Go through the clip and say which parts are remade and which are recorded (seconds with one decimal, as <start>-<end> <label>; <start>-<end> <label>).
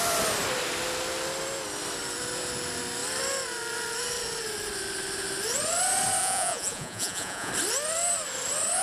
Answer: 0.0-6.2 recorded; 6.2-7.5 remade; 7.5-8.8 recorded